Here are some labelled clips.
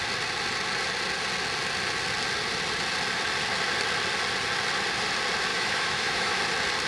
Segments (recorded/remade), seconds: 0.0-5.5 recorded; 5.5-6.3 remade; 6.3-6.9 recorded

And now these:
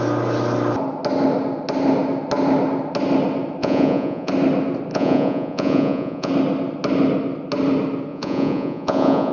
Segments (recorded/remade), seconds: 0.0-3.6 recorded; 3.6-4.3 remade; 4.3-4.9 recorded; 4.9-6.3 remade; 6.3-8.1 recorded; 8.1-9.3 remade

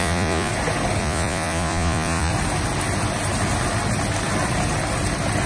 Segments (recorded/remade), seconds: 0.0-0.5 remade; 0.5-1.0 recorded; 1.0-2.3 remade; 2.3-5.5 recorded

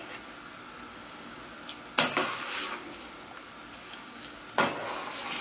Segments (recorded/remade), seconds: 0.0-0.9 recorded; 0.9-1.4 remade; 1.4-2.4 recorded; 2.4-3.1 remade; 3.1-3.8 recorded; 3.8-4.4 remade; 4.4-5.4 recorded

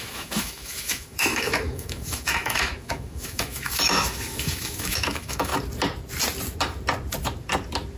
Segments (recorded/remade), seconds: 0.0-5.5 remade; 5.5-8.0 recorded

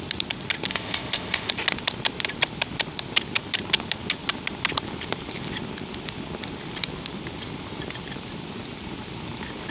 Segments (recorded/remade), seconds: 0.0-0.7 recorded; 0.7-1.5 remade; 1.5-9.7 recorded

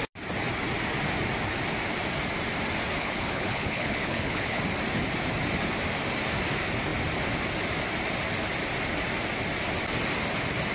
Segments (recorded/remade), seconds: 0.0-3.0 recorded; 3.0-4.6 remade; 4.6-10.7 recorded